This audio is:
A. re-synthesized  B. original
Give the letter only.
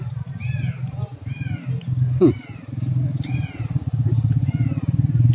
B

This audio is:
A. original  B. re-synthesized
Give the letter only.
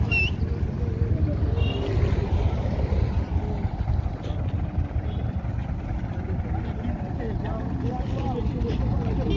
A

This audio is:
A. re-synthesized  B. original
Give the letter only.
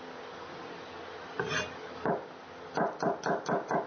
B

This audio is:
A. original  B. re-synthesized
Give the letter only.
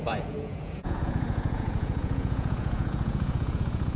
B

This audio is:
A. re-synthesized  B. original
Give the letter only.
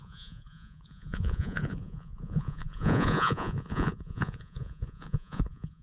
A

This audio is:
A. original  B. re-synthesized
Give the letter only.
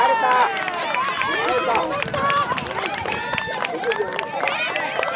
B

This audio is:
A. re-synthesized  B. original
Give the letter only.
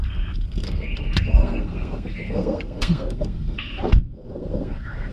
A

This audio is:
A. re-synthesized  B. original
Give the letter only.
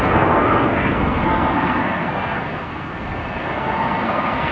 A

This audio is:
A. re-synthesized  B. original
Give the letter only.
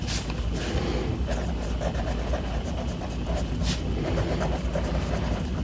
B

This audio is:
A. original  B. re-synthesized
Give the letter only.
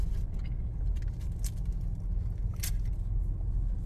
A